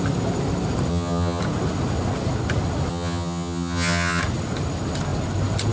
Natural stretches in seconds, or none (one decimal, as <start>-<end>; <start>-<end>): 0.0-0.9; 1.4-2.9; 4.2-5.7